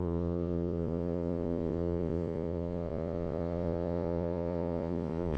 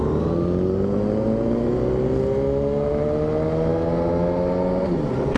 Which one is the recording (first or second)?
second